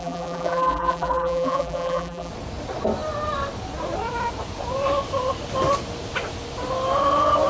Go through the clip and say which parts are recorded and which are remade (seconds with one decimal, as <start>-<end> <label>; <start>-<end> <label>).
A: 0.0-2.3 remade; 2.3-7.5 recorded